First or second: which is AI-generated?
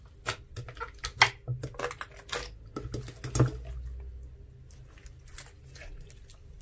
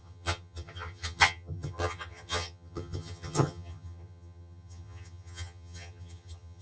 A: second